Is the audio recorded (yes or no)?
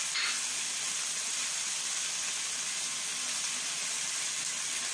yes